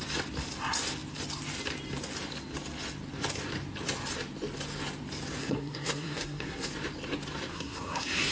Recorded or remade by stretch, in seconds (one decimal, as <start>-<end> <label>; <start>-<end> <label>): 0.0-5.4 recorded; 5.4-6.7 remade; 6.7-7.5 recorded; 7.5-8.3 remade